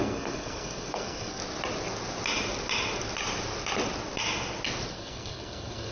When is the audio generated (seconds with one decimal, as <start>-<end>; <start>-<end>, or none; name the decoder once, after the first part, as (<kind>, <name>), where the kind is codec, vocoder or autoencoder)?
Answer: 0.0-1.4 (codec, SNAC); 4.9-5.9